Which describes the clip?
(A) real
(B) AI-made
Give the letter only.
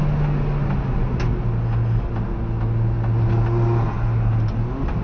A